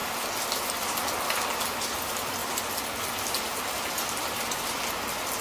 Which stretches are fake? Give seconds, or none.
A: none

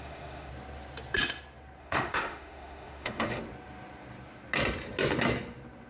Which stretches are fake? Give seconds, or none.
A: 0.0-0.5 (autoencoder, DAC-VAE); 1.8-3.4